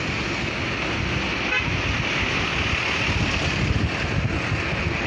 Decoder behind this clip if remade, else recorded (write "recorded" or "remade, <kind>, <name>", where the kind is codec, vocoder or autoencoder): recorded